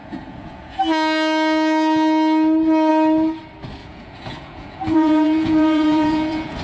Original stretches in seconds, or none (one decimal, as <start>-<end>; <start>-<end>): 0.8-3.8